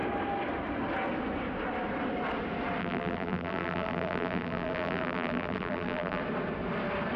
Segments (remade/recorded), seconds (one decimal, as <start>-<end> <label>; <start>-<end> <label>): 0.0-2.8 recorded; 2.8-6.2 remade; 6.2-7.2 recorded